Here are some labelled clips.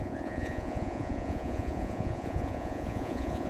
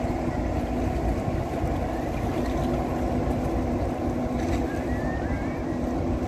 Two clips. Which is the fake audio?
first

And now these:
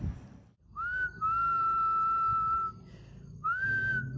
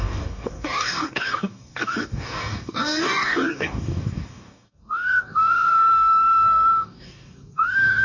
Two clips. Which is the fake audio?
second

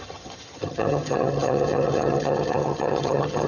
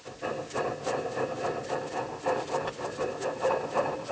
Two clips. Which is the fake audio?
first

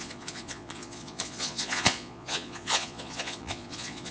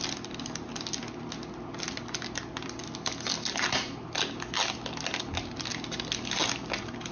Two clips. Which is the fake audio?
first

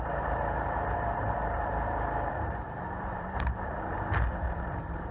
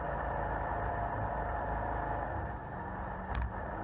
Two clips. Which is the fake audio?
first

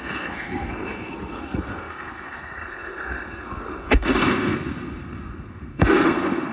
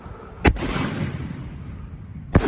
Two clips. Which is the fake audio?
first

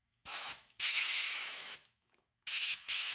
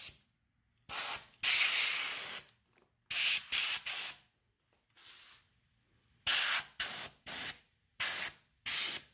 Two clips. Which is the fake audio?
first